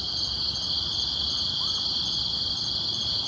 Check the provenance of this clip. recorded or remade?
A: recorded